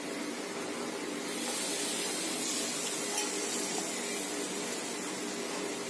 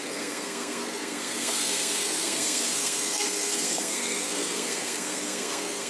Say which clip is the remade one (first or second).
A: second